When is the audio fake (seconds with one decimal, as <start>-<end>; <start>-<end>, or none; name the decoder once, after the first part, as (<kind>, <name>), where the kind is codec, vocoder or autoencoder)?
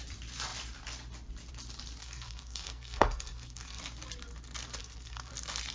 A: 2.0-3.8 (codec, SNAC); 4.8-5.3